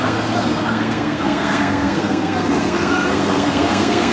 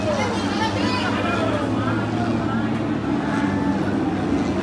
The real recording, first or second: second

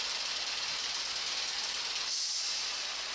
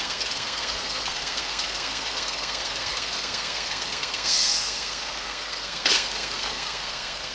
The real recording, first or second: first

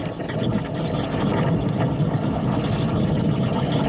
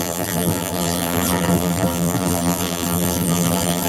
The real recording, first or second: first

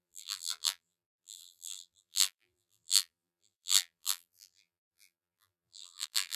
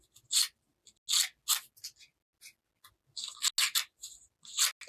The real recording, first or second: second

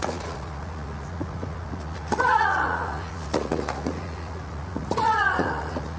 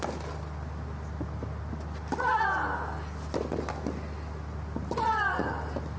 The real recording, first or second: second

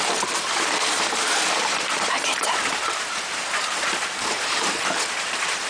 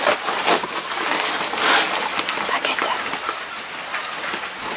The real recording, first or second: second